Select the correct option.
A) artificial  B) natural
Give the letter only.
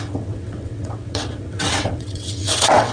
A